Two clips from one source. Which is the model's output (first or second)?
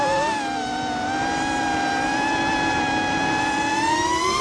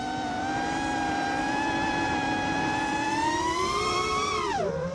second